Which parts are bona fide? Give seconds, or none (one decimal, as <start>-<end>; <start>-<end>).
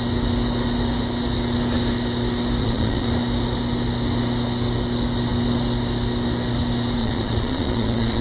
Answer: 0.0-2.6; 3.1-7.0